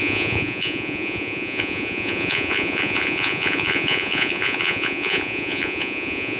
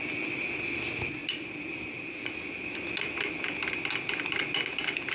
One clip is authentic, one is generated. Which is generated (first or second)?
first